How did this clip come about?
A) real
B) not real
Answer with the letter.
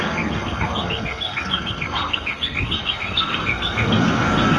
B